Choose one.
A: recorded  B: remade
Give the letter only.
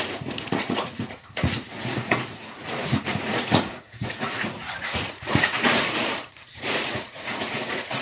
B